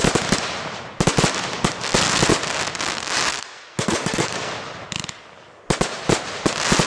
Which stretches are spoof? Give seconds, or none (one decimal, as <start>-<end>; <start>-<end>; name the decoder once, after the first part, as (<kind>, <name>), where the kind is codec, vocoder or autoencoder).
3.3-4.5 (codec, SNAC)